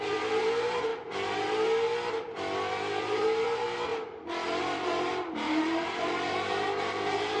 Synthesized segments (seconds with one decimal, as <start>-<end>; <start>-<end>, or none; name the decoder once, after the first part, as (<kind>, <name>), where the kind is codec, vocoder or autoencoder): 0.0-0.9 (vocoder, BigVGAN v2); 3.0-3.9; 4.6-7.4